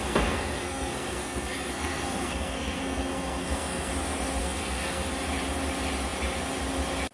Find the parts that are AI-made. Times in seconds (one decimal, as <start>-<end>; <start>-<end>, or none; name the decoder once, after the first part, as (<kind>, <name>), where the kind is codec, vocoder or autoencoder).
0.0-3.9 (codec, SNAC); 4.4-5.1